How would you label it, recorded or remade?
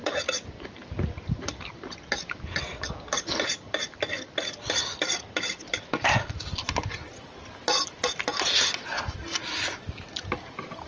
recorded